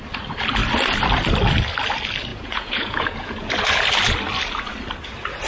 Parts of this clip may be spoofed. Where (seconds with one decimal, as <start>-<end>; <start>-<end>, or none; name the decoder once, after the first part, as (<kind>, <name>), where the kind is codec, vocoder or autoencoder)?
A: 2.3-3.5 (vocoder, Vocos)